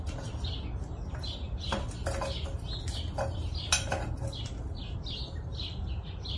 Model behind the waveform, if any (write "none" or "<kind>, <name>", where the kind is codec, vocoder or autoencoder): none